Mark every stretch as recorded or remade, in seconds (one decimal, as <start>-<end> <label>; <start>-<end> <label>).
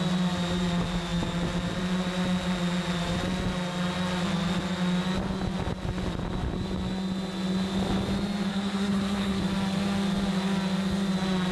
0.0-8.5 recorded; 8.5-9.4 remade; 9.4-11.5 recorded